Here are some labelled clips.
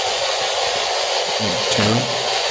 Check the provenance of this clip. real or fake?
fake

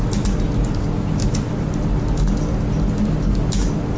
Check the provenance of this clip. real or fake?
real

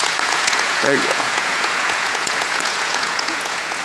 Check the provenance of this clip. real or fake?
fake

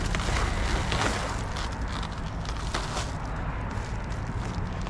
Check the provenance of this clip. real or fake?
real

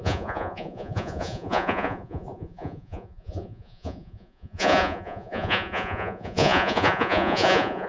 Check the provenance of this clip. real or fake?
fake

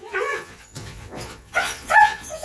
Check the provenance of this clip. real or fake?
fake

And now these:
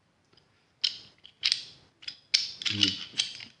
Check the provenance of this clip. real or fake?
real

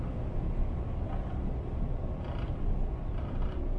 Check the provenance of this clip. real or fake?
real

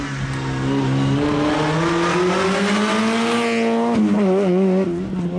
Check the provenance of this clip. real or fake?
real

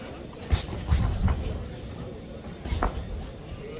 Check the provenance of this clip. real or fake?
real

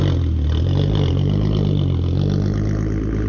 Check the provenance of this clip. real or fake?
real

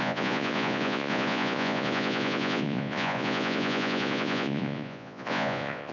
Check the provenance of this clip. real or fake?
fake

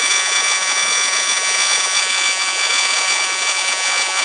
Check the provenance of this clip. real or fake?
fake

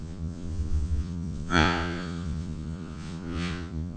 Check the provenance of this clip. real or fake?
fake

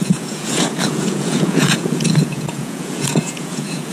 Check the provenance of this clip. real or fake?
fake